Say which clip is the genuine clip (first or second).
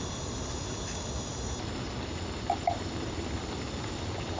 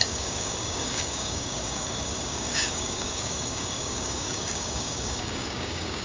first